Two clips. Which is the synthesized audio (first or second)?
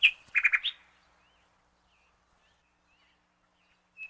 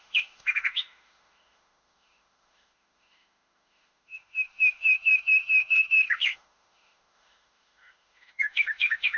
second